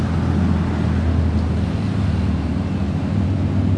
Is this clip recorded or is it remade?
recorded